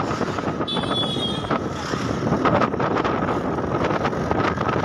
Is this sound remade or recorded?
recorded